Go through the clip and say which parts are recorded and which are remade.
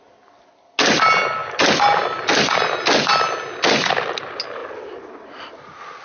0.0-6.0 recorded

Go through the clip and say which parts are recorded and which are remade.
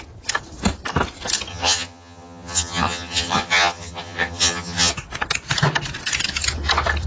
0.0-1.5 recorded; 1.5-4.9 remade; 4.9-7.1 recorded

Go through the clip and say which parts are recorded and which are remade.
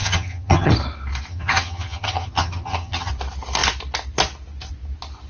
0.0-0.7 remade; 0.7-1.3 recorded; 1.3-3.1 remade; 3.1-5.3 recorded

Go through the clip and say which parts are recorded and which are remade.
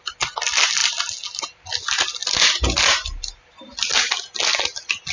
0.0-5.1 recorded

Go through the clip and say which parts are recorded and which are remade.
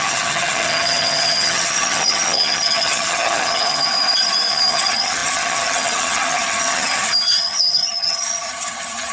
0.0-3.9 remade; 3.9-4.5 recorded; 4.5-9.1 remade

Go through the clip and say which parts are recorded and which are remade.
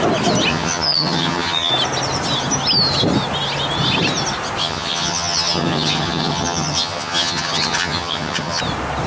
0.0-0.5 recorded; 0.5-1.7 remade; 1.7-4.6 recorded; 4.6-8.6 remade; 8.6-9.1 recorded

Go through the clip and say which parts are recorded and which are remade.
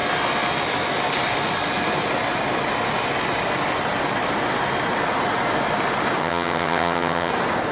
0.0-6.2 recorded; 6.2-7.3 remade; 7.3-7.7 recorded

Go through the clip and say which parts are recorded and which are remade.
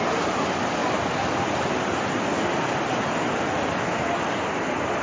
0.0-5.0 recorded